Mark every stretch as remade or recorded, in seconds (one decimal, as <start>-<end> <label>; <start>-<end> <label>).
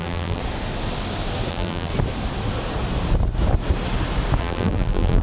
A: 0.0-0.4 remade; 0.4-1.5 recorded; 1.5-1.9 remade; 1.9-4.4 recorded; 4.4-5.2 remade